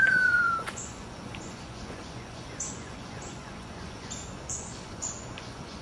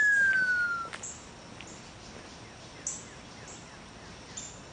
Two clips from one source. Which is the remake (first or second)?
first